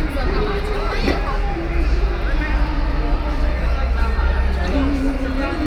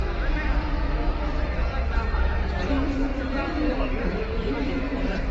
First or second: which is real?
first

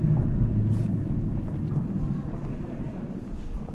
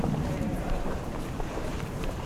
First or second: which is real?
first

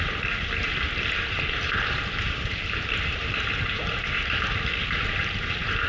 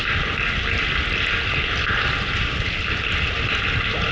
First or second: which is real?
second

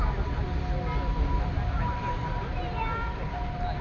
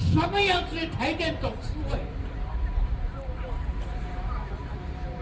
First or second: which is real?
first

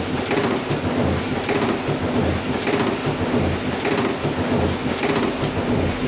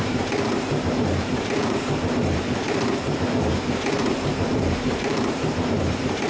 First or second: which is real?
first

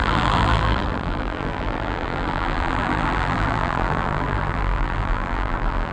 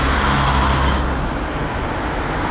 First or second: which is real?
second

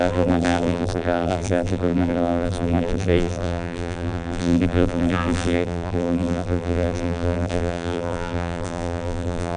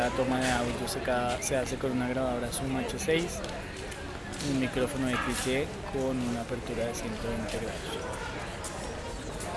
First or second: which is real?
second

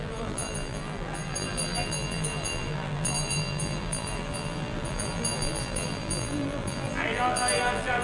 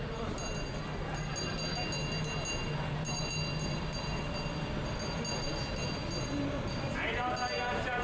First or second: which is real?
second